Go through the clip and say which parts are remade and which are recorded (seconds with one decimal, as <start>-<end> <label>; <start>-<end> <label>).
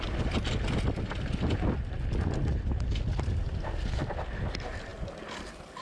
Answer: 0.0-5.8 recorded